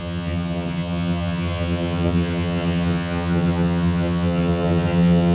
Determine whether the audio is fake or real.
fake